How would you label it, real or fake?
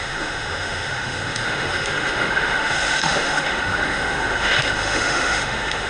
fake